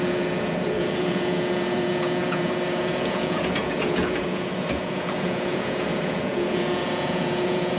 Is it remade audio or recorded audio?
remade